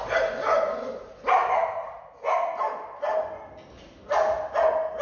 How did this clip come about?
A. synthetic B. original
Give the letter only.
B